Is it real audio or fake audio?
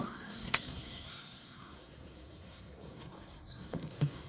fake